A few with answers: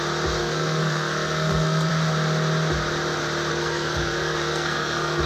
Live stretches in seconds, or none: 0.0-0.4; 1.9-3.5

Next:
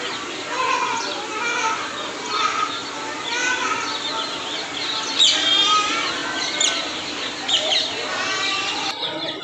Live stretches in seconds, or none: 0.0-9.4

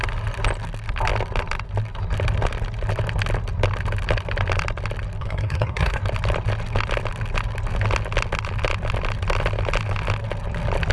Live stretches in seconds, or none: 0.0-5.2; 6.0-10.9